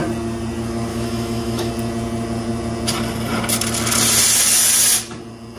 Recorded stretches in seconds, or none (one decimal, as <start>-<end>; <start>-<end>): 0.0-0.9; 1.7-5.6